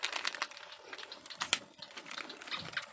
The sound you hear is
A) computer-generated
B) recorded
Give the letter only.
B